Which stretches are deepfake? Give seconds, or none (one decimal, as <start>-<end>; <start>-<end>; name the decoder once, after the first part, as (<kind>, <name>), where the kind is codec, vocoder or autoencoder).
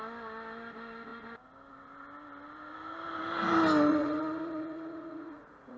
3.9-5.8 (vocoder, Vocos)